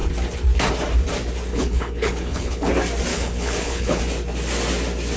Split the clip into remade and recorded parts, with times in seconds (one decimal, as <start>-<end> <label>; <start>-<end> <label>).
0.0-1.5 recorded; 1.5-2.7 remade; 2.7-3.1 recorded; 3.1-4.0 remade; 4.0-5.2 recorded